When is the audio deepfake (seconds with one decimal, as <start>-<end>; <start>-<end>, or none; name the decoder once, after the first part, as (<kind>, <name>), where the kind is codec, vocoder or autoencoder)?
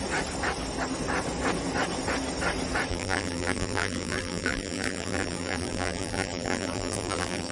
2.9-7.5 (vocoder, BigVGAN v2)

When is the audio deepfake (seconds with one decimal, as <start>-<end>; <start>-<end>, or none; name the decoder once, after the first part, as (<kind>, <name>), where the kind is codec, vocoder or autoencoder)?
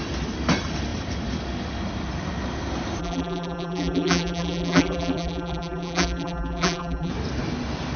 3.0-7.1 (vocoder, BigVGAN v2)